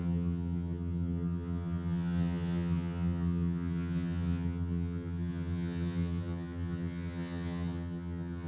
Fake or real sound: fake